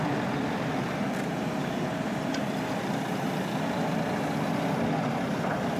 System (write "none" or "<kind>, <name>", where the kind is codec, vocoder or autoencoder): none